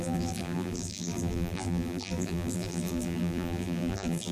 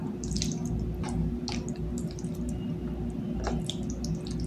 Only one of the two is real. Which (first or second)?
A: second